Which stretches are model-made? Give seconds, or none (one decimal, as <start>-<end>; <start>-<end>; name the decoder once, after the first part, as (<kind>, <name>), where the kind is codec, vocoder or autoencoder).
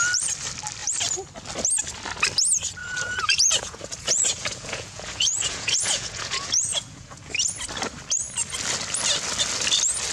2.8-7.3 (vocoder, Vocos)